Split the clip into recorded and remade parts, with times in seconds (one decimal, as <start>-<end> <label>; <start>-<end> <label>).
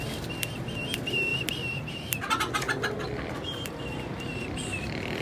0.0-5.2 recorded